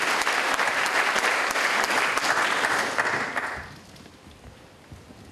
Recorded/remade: recorded